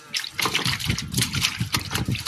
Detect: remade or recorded recorded